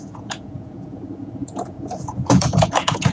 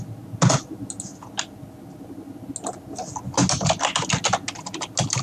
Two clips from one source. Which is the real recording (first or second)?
second